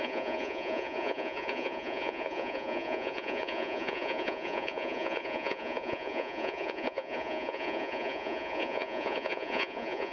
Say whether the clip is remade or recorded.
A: remade